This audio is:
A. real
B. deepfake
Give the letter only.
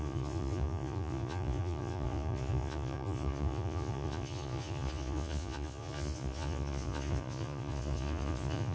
B